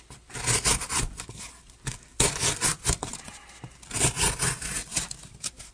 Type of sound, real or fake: real